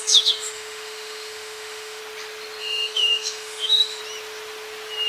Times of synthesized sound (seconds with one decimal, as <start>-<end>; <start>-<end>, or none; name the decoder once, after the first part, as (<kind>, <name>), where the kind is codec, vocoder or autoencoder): 0.0-2.0 (autoencoder, DAC-VAE); 2.6-4.0